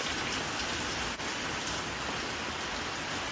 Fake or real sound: fake